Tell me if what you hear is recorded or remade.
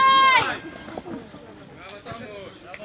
recorded